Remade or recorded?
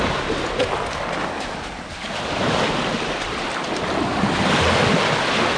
recorded